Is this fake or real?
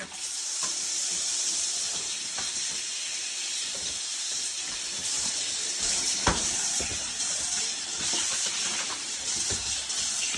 fake